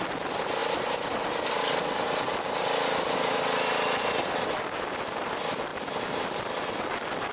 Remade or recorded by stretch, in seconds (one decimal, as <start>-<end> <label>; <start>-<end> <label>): 0.0-7.3 recorded